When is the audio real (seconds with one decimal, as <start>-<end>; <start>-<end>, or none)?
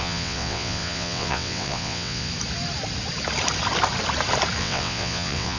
2.3-4.6